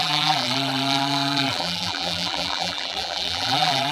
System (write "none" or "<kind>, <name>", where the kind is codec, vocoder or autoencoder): vocoder, BigVGAN v2